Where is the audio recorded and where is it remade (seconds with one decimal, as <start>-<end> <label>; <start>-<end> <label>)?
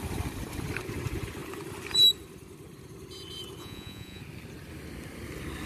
0.0-3.6 recorded; 3.6-4.2 remade; 4.2-5.7 recorded